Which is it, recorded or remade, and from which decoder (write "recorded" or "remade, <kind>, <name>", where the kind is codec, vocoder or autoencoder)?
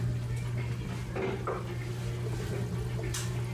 recorded